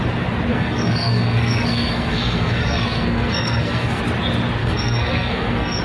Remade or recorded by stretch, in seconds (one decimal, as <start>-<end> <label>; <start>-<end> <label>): 0.0-0.5 recorded; 0.5-4.0 remade; 4.0-4.6 recorded; 4.6-5.8 remade